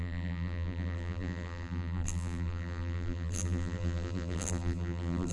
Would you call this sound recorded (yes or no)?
no